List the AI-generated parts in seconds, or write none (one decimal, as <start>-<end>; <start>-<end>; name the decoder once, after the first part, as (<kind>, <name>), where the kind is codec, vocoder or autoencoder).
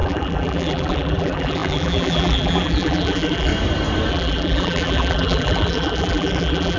0.0-3.5 (vocoder, BigVGAN v2); 4.1-6.8